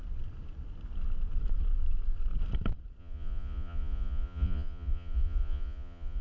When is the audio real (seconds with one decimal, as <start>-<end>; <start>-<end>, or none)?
0.0-3.0